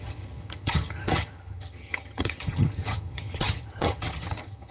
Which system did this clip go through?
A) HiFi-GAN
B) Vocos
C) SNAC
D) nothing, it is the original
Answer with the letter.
A